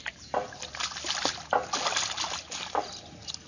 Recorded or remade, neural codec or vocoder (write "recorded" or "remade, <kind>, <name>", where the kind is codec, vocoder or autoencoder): recorded